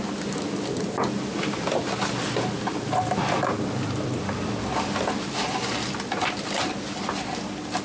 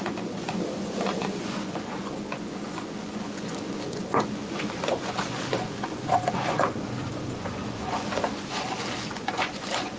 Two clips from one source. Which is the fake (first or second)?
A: second